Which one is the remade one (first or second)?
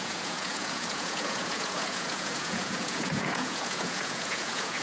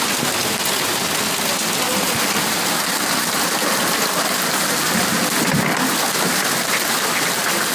first